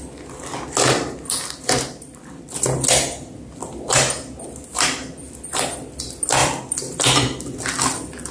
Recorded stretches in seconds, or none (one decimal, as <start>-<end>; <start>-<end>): 0.0-6.4